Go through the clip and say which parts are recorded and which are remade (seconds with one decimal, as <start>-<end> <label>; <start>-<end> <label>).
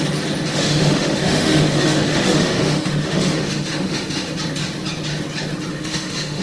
0.0-0.5 recorded; 0.5-4.3 remade; 4.3-5.7 recorded; 5.7-6.4 remade